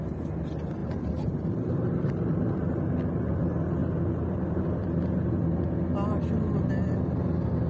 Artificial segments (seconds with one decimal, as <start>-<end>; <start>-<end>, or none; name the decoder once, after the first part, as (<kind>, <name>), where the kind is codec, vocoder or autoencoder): 0.8-2.5 (vocoder, BigVGAN v2); 3.8-4.4